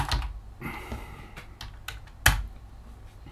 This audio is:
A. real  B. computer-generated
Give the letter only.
A